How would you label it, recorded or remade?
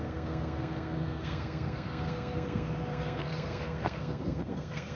remade